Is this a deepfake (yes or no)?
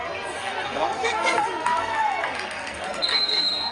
yes